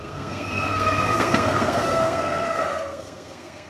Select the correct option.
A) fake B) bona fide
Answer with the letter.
A